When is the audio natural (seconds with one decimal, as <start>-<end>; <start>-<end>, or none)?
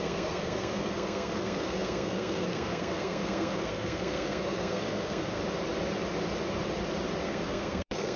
5.4-7.2